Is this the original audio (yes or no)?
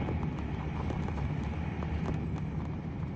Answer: yes